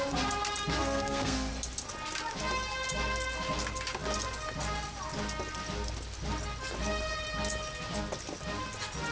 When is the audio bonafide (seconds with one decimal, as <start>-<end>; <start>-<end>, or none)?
0.0-0.8; 1.5-9.1